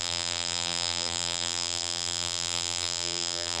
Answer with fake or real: fake